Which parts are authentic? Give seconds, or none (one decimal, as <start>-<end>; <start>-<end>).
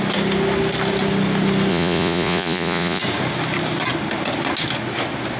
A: 0.0-1.7; 3.0-5.4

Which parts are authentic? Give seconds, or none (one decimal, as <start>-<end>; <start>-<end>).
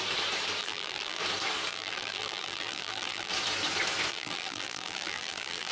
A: 0.0-0.6; 1.2-1.7; 3.3-4.1